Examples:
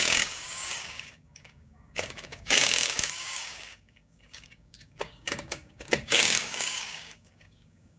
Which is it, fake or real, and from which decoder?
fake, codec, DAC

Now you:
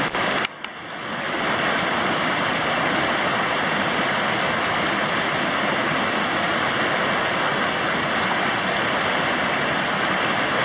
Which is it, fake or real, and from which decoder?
real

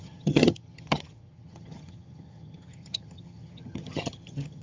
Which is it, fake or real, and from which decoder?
fake, vocoder, HiFi-GAN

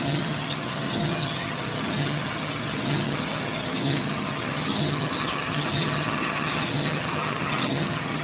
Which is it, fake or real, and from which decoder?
fake, vocoder, HiFi-GAN